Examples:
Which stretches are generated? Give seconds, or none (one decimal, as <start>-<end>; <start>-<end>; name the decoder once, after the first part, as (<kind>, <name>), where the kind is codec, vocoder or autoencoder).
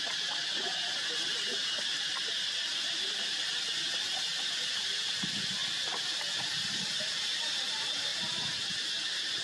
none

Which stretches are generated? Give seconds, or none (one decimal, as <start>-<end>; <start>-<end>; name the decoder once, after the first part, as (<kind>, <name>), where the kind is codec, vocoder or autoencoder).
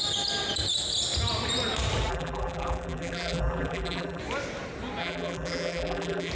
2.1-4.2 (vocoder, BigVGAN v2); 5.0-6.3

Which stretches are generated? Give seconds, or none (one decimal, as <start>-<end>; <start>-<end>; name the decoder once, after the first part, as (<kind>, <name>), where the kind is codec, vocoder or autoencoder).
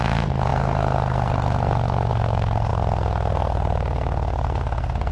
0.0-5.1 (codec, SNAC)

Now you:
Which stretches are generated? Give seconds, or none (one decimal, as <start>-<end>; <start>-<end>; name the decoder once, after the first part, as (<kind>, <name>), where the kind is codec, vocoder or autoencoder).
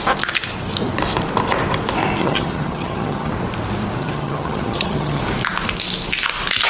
2.2-3.3 (vocoder, HiFi-GAN); 4.0-5.2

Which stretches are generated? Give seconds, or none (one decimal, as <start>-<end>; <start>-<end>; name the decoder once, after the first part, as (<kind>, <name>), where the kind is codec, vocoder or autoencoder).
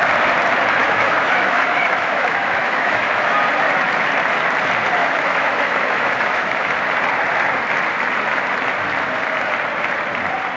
0.8-3.3 (autoencoder, DAC-VAE); 5.0-6.7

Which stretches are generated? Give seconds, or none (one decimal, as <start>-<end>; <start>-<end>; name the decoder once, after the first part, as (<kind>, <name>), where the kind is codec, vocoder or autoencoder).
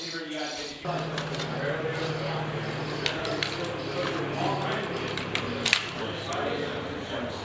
none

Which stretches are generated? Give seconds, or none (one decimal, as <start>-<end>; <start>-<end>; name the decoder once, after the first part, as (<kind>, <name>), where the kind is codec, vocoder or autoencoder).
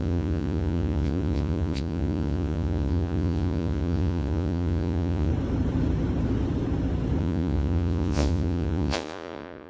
0.0-5.3 (vocoder, Vocos); 7.2-9.7